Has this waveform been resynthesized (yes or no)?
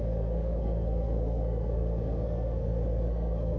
yes